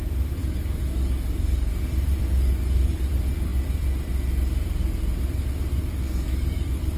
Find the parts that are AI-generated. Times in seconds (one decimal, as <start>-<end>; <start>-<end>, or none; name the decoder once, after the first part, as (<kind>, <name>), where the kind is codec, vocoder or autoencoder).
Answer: 0.4-1.7 (codec, DAC); 2.2-3.0; 5.8-7.0